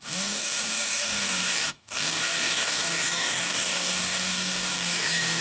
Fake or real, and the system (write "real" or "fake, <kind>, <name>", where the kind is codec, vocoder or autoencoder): fake, codec, DAC